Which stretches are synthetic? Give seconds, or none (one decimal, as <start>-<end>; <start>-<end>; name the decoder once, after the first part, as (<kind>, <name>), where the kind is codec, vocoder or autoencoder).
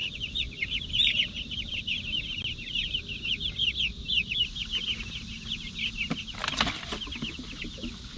0.0-1.8 (vocoder, BigVGAN v2)